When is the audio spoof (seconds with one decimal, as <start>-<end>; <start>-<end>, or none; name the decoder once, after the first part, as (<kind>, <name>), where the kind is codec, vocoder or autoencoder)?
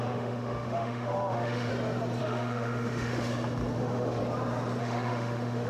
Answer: 0.0-1.7 (autoencoder, DAC-VAE); 2.2-3.3; 3.8-4.2; 4.8-5.7